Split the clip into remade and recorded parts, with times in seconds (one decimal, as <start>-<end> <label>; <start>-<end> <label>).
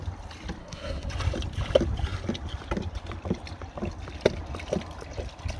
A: 0.0-0.6 recorded; 0.6-1.1 remade; 1.1-5.6 recorded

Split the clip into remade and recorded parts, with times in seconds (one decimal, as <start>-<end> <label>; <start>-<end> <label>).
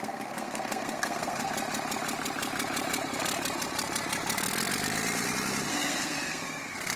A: 0.0-1.5 remade; 1.5-5.7 recorded; 5.7-7.0 remade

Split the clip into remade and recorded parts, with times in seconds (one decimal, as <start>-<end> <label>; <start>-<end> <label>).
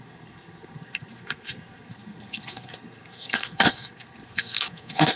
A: 0.0-5.2 remade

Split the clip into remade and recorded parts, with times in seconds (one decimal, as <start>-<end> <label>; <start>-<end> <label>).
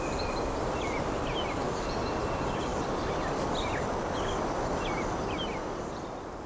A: 0.0-6.5 recorded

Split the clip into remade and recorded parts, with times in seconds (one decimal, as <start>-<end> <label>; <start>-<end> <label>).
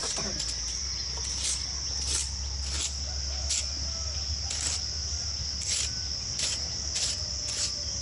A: 0.0-8.0 recorded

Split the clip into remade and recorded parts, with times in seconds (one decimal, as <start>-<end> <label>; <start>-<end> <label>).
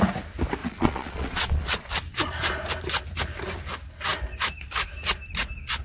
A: 0.0-0.6 recorded; 0.6-1.9 remade; 1.9-5.8 recorded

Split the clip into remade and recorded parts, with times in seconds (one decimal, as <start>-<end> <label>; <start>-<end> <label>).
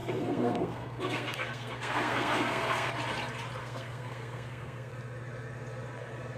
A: 0.0-2.9 remade; 2.9-3.6 recorded; 3.6-4.9 remade; 4.9-6.4 recorded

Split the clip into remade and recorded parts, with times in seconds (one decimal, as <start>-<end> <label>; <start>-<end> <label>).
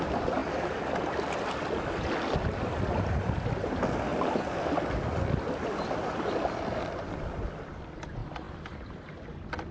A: 0.0-9.7 recorded